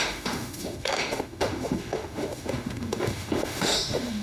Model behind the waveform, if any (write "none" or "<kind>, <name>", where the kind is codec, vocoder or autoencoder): autoencoder, DAC-VAE